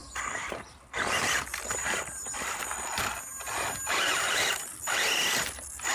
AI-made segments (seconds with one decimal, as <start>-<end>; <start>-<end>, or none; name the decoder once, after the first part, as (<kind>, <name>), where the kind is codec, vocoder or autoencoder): 0.0-2.7 (vocoder, BigVGAN v2)